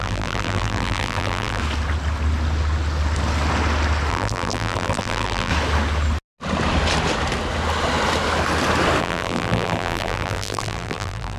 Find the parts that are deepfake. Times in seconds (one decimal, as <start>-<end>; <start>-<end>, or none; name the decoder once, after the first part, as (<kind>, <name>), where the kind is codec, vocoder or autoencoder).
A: 0.0-1.6 (vocoder, BigVGAN v2); 4.1-5.5; 9.0-11.4